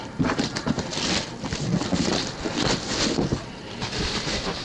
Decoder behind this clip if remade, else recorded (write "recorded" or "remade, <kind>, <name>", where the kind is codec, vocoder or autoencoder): remade, vocoder, BigVGAN v2